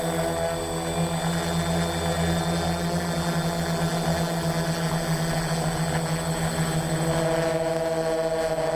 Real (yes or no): yes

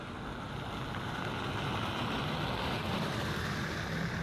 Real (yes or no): yes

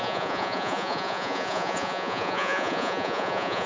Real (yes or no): no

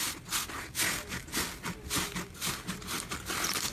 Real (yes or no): yes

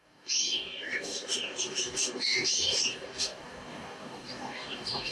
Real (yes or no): no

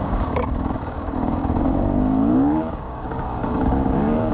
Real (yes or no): no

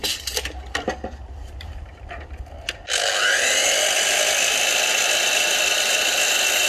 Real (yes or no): yes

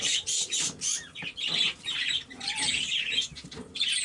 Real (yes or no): no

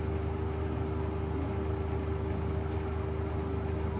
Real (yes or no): yes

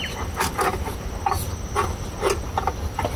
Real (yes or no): yes